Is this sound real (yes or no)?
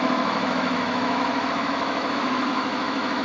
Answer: no